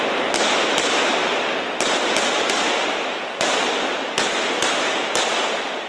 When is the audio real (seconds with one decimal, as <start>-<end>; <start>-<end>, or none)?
0.0-5.9